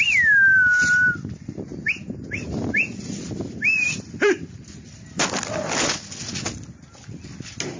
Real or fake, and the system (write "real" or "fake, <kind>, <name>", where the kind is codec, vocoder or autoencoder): real